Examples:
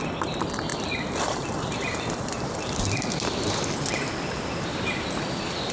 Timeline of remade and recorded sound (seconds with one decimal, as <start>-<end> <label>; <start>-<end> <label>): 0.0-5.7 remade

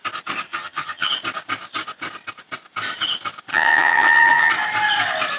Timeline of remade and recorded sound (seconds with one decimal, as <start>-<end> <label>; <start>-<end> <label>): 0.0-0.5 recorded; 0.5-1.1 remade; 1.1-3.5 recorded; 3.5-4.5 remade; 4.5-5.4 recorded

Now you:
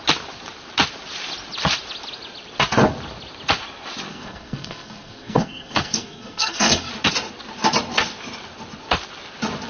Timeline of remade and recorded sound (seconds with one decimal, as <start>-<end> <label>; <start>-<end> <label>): 0.0-4.1 recorded; 4.1-6.9 remade; 6.9-9.7 recorded

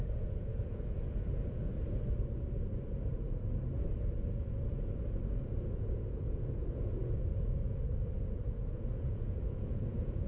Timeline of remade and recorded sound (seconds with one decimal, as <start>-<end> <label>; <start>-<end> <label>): 0.0-1.7 remade; 1.7-5.3 recorded; 5.3-10.3 remade